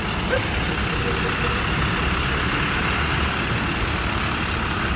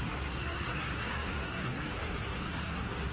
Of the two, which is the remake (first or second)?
second